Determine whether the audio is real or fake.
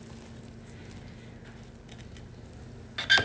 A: real